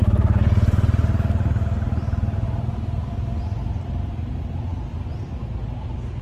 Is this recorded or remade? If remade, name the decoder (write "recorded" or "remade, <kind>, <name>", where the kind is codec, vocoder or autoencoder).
recorded